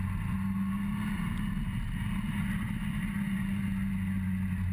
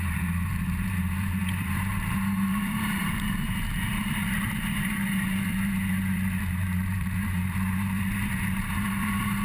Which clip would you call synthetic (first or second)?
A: second